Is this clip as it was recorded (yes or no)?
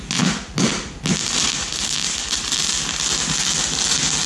yes